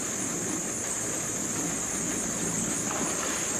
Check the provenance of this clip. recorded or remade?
recorded